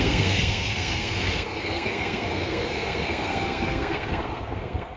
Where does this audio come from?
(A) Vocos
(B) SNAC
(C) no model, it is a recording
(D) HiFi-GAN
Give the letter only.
B